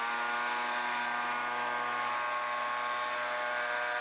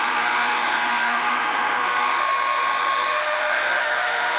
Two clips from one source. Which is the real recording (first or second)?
first